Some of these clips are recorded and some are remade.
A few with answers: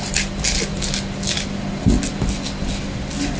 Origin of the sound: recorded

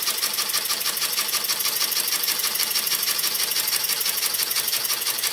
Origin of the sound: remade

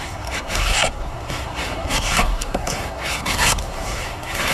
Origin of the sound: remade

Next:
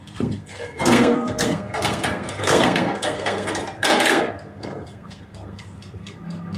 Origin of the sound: remade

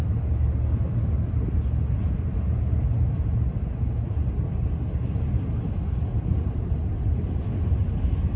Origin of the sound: recorded